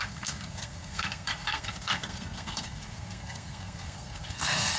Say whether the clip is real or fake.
fake